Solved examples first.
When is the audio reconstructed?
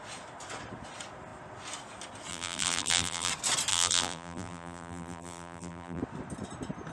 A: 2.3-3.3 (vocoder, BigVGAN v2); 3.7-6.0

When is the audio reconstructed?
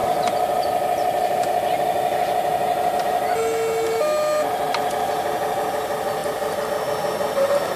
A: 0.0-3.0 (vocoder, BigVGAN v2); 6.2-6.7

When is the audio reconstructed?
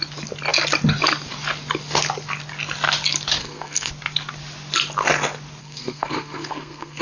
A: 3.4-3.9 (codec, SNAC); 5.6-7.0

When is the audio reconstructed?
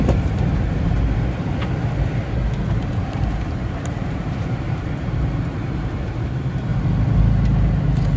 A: 0.0-6.7 (vocoder, BigVGAN v2); 7.2-8.2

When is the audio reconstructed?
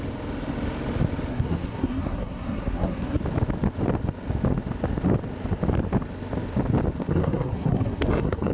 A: 1.3-3.2 (codec, SNAC); 7.0-8.5